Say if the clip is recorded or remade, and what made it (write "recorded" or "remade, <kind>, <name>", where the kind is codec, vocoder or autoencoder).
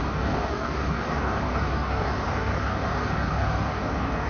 remade, codec, DAC